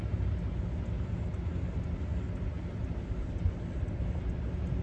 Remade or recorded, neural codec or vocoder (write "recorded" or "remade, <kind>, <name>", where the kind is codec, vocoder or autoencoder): recorded